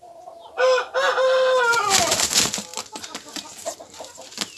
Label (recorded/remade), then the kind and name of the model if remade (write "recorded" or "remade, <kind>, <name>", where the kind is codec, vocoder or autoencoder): recorded